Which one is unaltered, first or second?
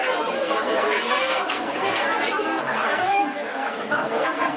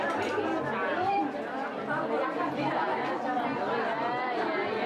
second